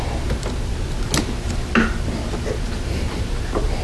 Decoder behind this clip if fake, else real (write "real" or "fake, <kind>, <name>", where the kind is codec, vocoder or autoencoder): real